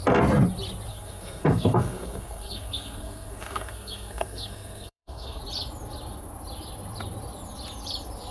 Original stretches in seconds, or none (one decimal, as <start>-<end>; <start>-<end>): 0.0-0.9; 5.4-8.3